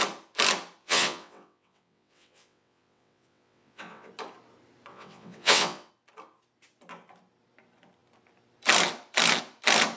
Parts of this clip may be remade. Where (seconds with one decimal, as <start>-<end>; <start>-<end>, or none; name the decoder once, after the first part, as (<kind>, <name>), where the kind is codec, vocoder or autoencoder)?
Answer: 0.8-4.1 (vocoder, WaveNeXt); 4.9-5.9